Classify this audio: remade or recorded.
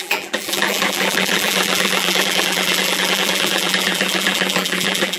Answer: remade